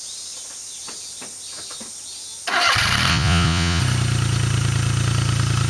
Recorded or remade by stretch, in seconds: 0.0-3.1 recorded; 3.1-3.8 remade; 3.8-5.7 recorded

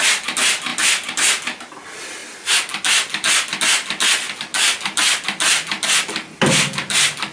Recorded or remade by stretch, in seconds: 0.0-7.3 recorded

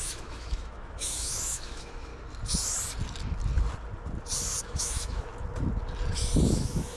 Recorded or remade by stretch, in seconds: 0.0-2.1 remade; 2.1-4.6 recorded; 4.6-5.3 remade; 5.3-6.5 recorded; 6.5-7.0 remade

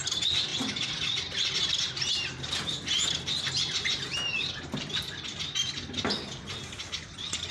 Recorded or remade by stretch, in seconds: 0.0-7.5 recorded

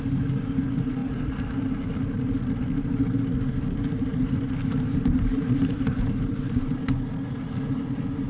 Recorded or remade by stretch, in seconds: 0.0-4.1 recorded; 4.1-6.8 remade; 6.8-8.3 recorded